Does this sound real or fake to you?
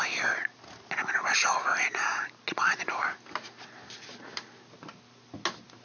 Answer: real